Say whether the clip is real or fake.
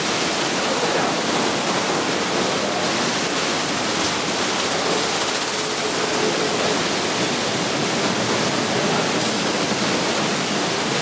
real